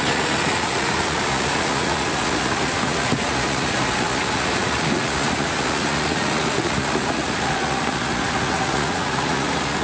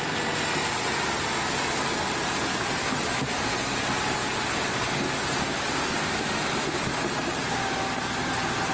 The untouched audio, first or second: second